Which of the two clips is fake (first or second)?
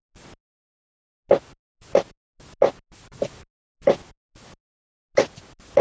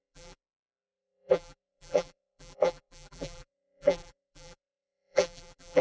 second